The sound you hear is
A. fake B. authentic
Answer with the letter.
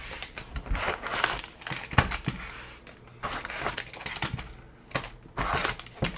B